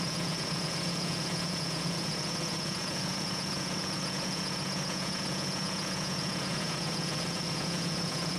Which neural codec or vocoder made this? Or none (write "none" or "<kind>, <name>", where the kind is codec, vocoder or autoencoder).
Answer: vocoder, Vocos